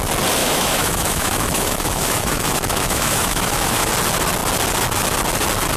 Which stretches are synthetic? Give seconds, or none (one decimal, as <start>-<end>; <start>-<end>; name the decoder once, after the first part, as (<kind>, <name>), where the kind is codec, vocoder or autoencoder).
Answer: 0.4-3.9 (autoencoder, DAC-VAE)